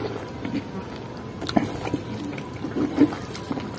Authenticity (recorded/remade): recorded